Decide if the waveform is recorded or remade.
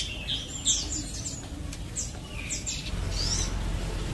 recorded